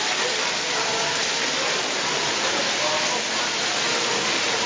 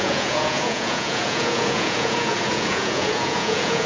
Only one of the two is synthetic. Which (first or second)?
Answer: second